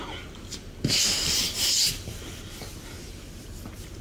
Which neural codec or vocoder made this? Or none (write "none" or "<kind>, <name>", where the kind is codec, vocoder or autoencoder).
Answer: none